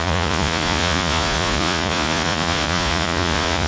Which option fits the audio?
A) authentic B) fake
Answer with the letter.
B